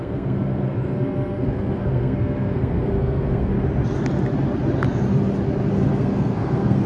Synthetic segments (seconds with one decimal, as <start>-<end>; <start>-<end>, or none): 0.0-3.5; 6.0-6.9